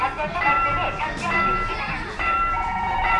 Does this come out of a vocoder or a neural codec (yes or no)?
no